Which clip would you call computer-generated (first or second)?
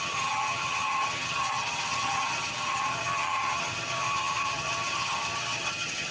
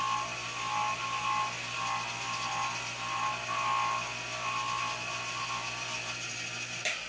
first